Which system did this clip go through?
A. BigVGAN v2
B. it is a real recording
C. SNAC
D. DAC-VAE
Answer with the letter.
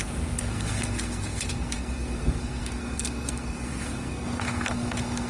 C